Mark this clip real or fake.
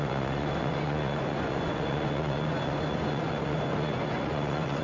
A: fake